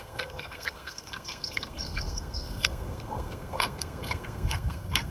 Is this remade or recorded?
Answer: remade